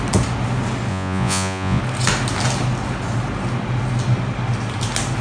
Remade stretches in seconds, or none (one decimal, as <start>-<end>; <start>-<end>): 0.9-1.8